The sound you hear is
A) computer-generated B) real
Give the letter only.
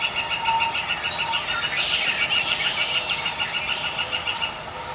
B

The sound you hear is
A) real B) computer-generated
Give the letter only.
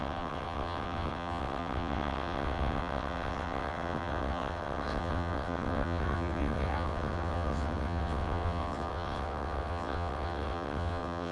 B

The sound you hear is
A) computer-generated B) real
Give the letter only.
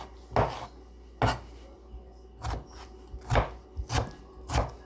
B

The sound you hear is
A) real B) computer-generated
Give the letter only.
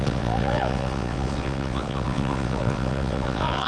B